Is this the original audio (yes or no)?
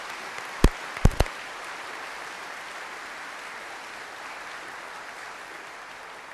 yes